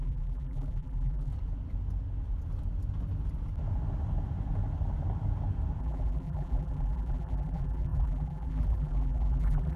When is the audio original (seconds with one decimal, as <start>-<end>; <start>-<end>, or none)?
1.3-5.8